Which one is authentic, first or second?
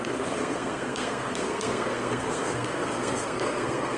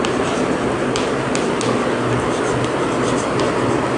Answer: second